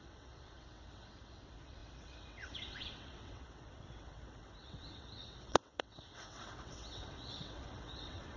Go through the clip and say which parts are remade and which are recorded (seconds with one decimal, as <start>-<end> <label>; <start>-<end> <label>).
0.0-8.4 remade

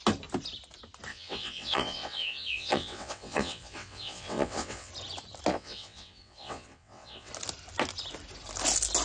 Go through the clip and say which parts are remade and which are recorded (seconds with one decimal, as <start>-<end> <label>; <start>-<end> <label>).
0.0-1.1 recorded; 1.1-4.9 remade; 4.9-5.5 recorded; 5.5-7.3 remade; 7.3-9.0 recorded

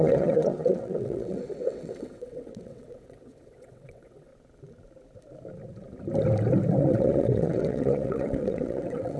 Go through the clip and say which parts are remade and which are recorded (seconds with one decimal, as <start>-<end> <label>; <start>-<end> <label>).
0.0-4.3 remade; 4.3-6.8 recorded; 6.8-9.2 remade

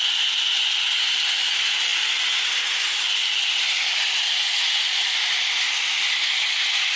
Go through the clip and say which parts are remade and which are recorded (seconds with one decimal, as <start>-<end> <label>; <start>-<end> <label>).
0.0-7.0 recorded

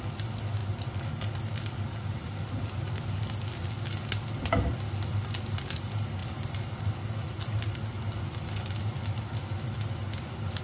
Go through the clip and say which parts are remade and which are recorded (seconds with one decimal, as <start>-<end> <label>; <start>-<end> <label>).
0.0-10.6 recorded